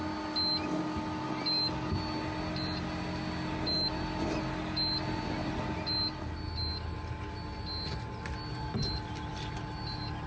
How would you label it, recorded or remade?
recorded